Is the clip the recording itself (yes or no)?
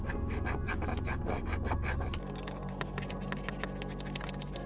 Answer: yes